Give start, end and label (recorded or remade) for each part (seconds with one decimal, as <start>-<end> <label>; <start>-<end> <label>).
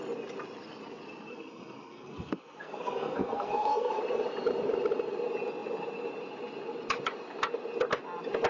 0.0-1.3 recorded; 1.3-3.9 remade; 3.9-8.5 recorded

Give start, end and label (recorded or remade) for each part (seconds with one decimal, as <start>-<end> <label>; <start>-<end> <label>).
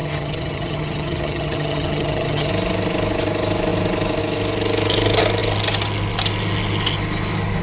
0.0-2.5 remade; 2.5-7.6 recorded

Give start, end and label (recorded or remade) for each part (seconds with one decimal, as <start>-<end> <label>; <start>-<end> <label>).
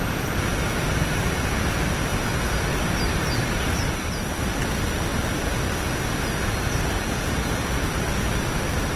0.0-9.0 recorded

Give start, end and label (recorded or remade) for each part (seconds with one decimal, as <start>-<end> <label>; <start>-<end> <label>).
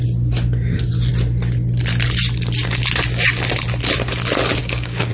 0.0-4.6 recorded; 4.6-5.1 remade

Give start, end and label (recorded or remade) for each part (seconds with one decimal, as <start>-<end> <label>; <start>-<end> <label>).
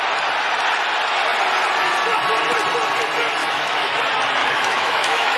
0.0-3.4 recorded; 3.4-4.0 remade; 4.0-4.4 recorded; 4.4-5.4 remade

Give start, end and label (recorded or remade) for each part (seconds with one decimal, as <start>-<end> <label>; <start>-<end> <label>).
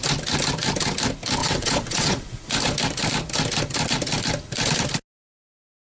0.0-1.4 recorded; 1.4-2.5 remade; 2.5-5.9 recorded